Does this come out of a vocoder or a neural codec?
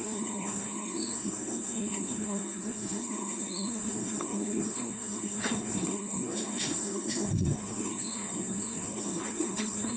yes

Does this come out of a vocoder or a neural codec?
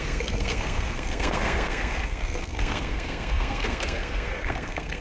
yes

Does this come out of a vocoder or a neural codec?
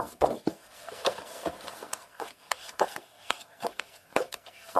yes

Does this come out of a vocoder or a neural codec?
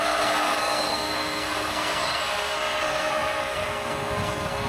yes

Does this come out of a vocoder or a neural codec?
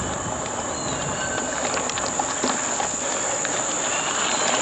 no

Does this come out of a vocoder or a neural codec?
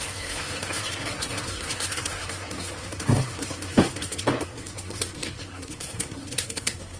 yes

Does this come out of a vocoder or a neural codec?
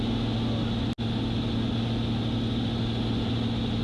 no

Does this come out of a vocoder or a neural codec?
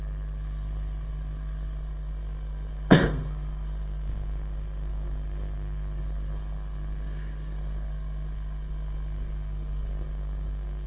yes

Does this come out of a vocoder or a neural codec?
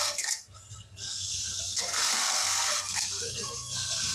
yes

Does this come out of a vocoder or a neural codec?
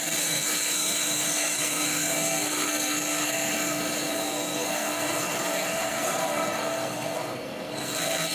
yes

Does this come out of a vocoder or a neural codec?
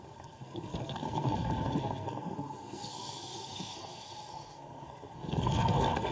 yes